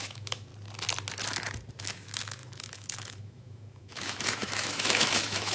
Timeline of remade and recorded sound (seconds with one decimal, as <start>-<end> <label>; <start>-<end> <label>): 0.0-0.5 remade; 0.5-1.8 recorded; 1.8-5.5 remade